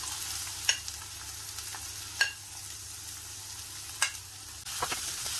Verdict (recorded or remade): recorded